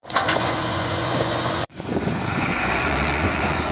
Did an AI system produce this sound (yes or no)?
yes